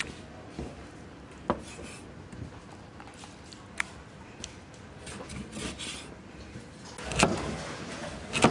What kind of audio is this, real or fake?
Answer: real